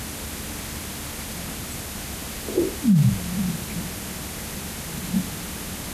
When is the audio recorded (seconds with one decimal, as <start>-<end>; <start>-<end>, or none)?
0.0-5.9